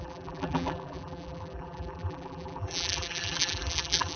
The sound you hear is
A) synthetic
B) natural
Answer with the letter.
A